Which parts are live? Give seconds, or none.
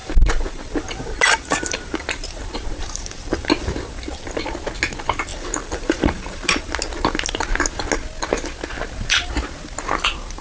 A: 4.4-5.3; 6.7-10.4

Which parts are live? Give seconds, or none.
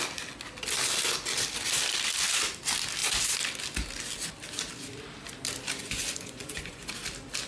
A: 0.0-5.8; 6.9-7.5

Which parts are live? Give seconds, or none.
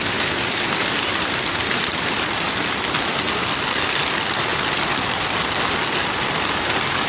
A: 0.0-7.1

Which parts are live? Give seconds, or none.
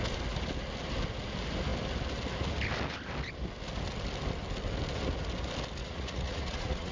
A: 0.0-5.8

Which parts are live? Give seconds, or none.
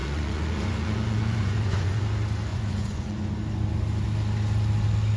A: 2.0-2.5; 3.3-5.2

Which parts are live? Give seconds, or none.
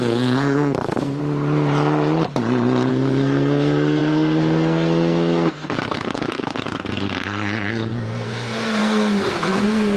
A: 1.2-2.9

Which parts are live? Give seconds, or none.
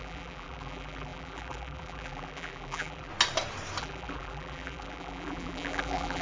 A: 3.1-3.8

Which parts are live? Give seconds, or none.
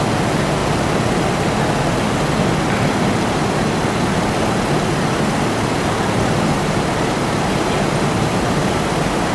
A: 0.0-0.6; 1.6-9.3